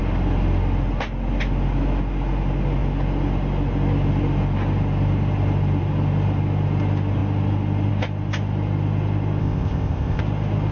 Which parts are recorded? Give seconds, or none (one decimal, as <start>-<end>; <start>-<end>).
0.0-9.4; 10.2-10.7